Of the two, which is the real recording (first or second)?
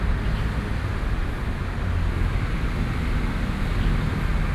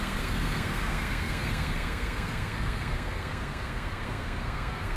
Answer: first